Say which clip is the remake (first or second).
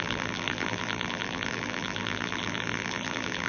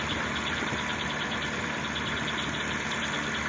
first